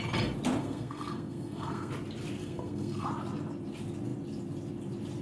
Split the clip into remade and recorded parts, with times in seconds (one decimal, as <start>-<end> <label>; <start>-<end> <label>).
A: 0.0-0.6 recorded; 0.6-1.9 remade; 1.9-2.4 recorded; 2.4-3.1 remade; 3.1-5.2 recorded